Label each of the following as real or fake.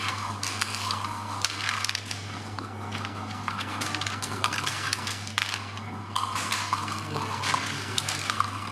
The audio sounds fake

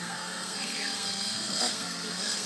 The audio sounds fake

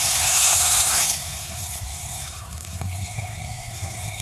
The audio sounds fake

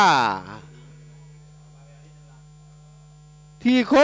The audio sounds real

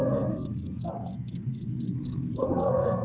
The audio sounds fake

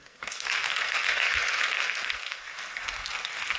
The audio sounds fake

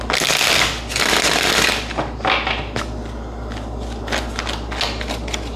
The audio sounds real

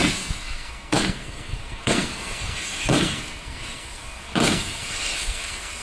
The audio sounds fake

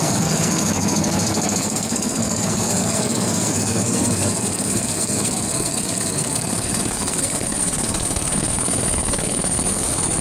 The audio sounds fake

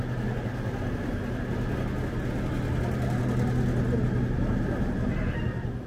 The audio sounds real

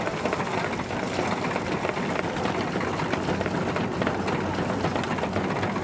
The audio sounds real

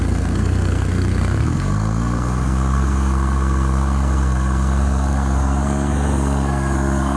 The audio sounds fake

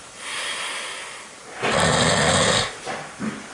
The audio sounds real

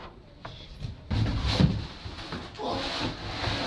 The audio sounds real